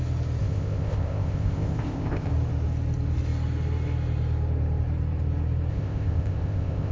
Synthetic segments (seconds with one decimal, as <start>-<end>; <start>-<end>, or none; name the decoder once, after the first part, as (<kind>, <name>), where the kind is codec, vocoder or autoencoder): 0.4-2.3 (codec, ZipCodec); 5.7-6.9